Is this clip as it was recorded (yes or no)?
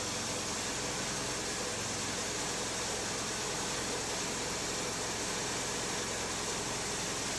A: yes